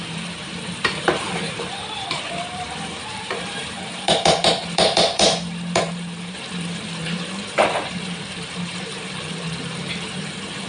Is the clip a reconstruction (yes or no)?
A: yes